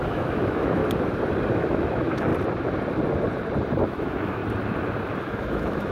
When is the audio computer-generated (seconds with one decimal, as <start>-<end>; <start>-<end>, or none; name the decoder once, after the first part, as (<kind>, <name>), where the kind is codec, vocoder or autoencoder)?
0.0-0.8 (autoencoder, DAC-VAE); 1.5-2.3; 3.8-4.4; 5.2-5.9